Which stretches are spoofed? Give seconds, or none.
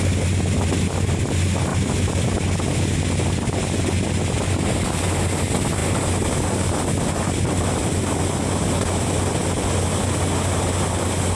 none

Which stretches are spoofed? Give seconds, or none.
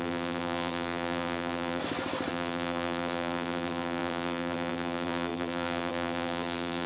0.0-1.8; 2.3-6.9